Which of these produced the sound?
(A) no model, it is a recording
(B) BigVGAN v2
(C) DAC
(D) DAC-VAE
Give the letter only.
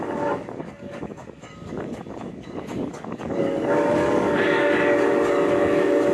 C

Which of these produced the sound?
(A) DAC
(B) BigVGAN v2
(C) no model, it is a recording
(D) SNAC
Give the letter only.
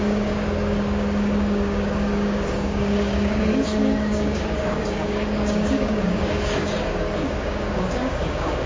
A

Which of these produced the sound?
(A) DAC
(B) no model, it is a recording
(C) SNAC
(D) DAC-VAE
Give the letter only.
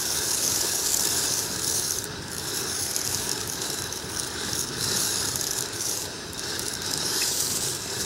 A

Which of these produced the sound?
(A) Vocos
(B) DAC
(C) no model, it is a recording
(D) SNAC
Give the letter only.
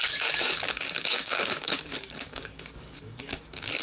B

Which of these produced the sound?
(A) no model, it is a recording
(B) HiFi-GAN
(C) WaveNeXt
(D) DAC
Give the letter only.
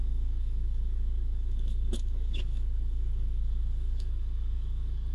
D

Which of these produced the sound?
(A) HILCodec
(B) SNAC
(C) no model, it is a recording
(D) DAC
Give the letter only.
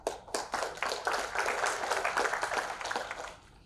C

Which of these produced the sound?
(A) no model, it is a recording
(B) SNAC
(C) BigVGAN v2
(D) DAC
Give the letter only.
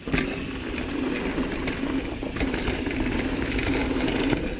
A